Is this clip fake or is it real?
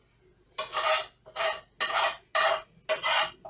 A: real